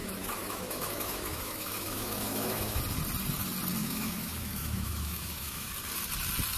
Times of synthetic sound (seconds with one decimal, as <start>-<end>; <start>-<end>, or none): 0.0-2.8; 3.8-5.7